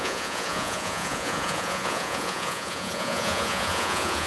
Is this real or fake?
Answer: fake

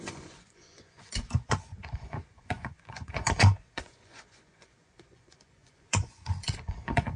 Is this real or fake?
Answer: fake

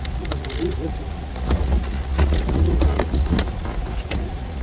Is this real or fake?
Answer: fake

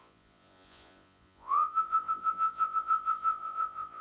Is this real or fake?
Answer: fake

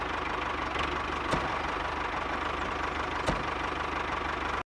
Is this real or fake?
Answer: real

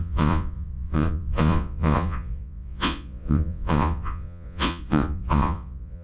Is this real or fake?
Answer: fake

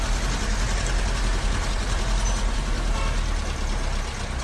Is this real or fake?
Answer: real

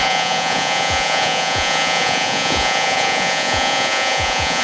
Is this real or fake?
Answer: fake